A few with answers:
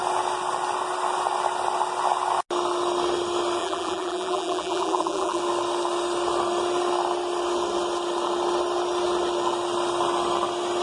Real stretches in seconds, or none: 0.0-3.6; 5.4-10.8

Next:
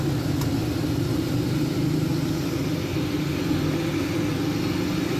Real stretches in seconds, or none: 0.0-0.6; 1.2-2.1; 3.9-5.2